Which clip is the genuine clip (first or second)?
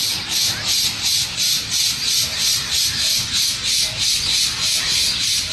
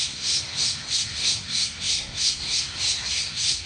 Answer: first